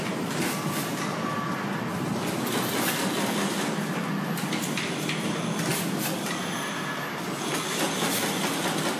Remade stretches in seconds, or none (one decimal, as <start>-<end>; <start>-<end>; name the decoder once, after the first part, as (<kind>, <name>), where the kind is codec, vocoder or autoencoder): 1.9-3.5 (vocoder, BigVGAN v2); 5.7-6.7